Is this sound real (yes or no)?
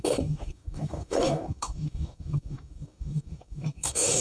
no